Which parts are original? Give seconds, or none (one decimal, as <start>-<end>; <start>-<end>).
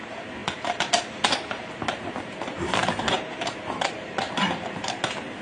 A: 0.4-1.5